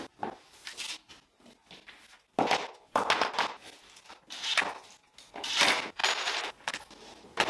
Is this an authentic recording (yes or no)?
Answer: yes